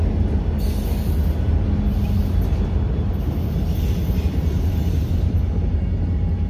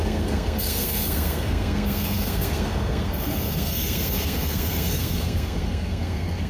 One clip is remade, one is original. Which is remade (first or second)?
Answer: second